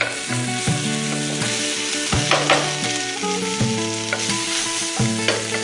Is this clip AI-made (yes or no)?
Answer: no